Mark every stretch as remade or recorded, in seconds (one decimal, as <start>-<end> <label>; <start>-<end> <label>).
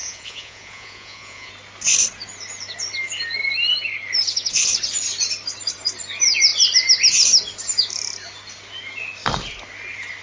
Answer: 0.0-1.5 remade; 1.5-10.2 recorded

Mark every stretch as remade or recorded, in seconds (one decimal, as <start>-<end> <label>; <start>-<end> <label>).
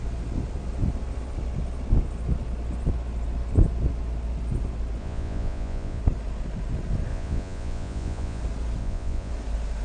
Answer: 0.0-5.0 recorded; 5.0-6.0 remade; 6.0-7.1 recorded; 7.1-8.4 remade; 8.4-8.8 recorded; 8.8-9.3 remade; 9.3-9.8 recorded